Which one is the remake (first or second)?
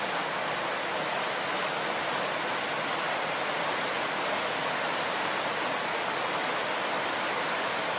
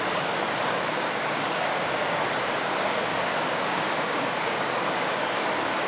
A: second